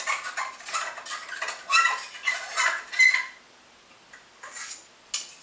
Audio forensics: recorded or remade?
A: recorded